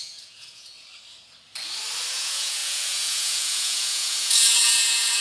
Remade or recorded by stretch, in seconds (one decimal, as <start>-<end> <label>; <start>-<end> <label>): 0.0-0.7 remade; 0.7-2.1 recorded; 2.1-5.2 remade